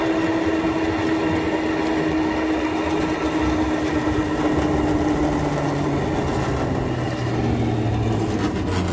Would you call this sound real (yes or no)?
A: yes